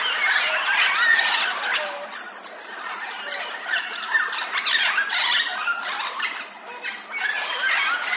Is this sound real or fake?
real